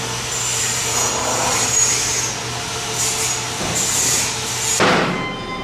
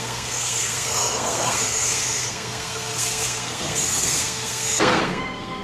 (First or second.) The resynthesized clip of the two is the second